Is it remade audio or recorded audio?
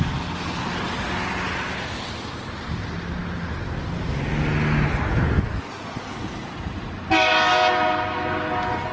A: recorded